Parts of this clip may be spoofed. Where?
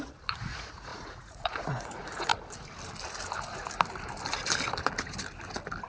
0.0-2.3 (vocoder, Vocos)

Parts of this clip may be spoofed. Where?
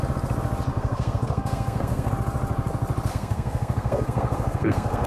0.7-2.1 (codec, SNAC); 3.1-5.1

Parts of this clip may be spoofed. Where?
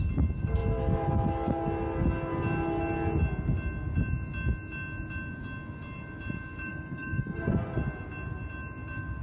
6.7-7.6 (codec, DAC)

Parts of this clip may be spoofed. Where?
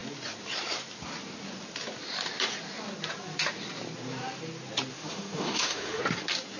4.9-6.0 (autoencoder, DAC-VAE)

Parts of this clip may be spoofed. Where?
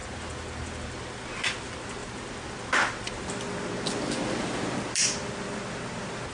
none